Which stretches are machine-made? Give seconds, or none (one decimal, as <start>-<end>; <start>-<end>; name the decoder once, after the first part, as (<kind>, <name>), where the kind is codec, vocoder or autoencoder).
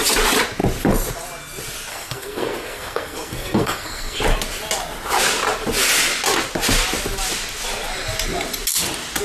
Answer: 1.9-4.2 (codec, SNAC)